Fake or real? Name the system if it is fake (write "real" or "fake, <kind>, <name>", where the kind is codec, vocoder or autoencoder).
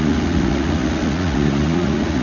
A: fake, vocoder, Vocos